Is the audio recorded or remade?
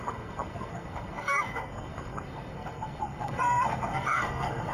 remade